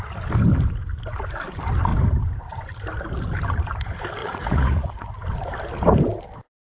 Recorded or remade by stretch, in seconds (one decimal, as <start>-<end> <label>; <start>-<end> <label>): 0.0-4.2 recorded; 4.2-5.1 remade; 5.1-6.6 recorded